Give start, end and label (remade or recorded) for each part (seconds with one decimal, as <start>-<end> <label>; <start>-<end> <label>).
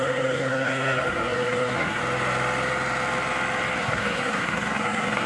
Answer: 0.0-2.0 remade; 2.0-3.8 recorded; 3.8-5.3 remade